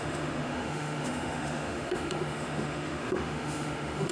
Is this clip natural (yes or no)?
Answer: no